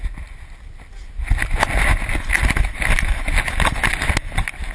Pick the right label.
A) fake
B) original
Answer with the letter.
B